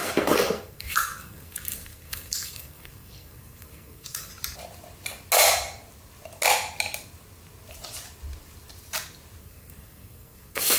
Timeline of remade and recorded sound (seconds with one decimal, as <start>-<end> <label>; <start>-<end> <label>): 0.0-4.3 remade; 4.3-9.4 recorded; 9.4-10.8 remade